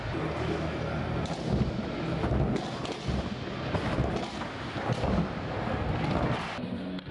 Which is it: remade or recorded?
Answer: recorded